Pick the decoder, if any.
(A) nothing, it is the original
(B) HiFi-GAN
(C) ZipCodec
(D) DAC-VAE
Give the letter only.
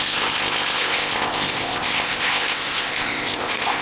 C